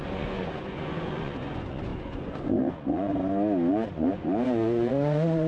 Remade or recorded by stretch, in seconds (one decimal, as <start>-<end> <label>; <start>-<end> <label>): 0.0-3.1 remade; 3.1-3.7 recorded; 3.7-5.5 remade